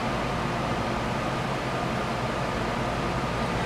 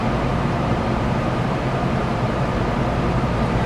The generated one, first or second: second